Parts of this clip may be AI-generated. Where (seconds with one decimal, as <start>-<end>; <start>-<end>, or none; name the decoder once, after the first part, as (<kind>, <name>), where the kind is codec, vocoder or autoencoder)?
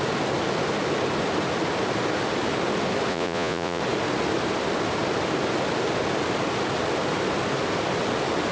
3.1-3.8 (vocoder, Vocos)